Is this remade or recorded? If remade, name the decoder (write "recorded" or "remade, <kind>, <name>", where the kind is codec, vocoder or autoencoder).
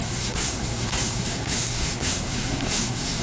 remade, codec, SNAC